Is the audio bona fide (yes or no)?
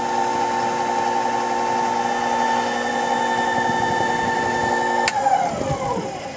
yes